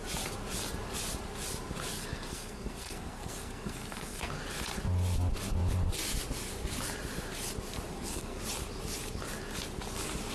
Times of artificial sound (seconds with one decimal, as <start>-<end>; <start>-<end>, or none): 1.9-4.3; 7.9-8.4